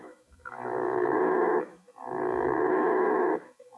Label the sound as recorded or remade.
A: remade